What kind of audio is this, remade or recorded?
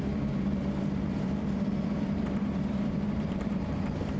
remade